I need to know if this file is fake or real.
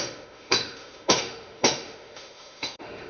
fake